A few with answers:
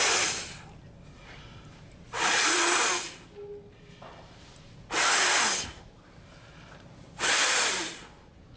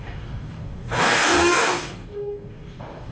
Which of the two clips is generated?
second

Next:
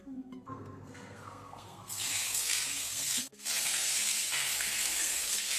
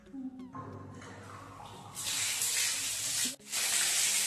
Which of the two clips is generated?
first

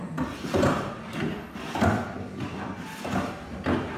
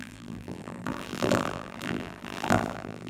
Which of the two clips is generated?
second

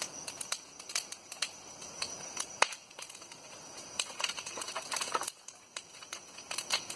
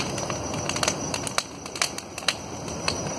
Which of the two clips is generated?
first